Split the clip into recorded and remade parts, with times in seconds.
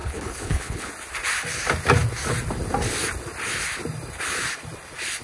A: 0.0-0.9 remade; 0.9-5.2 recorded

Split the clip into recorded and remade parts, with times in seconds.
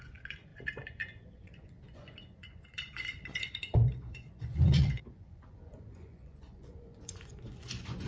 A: 0.0-8.1 remade